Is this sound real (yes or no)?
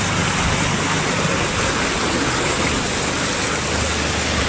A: yes